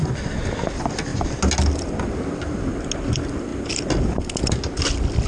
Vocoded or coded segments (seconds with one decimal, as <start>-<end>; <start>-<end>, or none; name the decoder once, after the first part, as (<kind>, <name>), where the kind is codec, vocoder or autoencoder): none